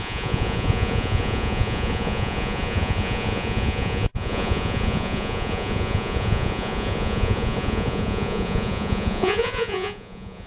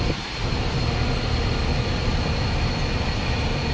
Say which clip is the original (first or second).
second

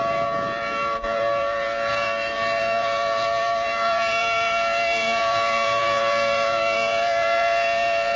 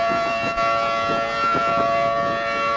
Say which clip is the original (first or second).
second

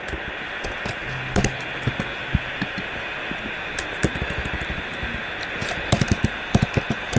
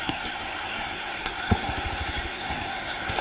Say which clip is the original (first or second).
first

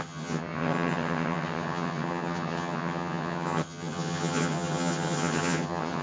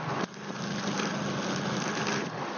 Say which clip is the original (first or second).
second